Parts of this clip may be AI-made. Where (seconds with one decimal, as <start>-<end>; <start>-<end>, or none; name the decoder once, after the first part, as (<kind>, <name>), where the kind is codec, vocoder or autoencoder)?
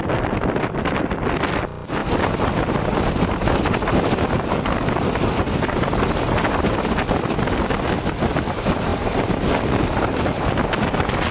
none